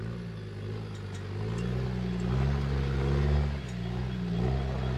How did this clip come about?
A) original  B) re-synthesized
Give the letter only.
A